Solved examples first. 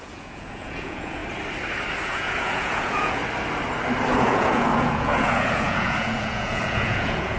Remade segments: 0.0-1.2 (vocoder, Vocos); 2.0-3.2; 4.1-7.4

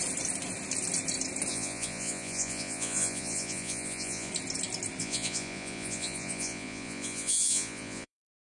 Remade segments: 1.5-4.3 (vocoder, Vocos); 5.0-8.4

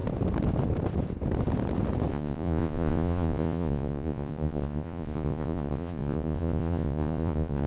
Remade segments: 2.1-7.7 (vocoder, Vocos)